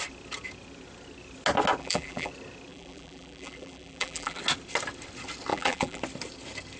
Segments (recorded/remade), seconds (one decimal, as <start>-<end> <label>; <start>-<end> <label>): 0.0-1.8 recorded; 1.8-2.3 remade; 2.3-2.7 recorded; 2.7-4.4 remade; 4.4-5.5 recorded; 5.5-6.0 remade; 6.0-6.8 recorded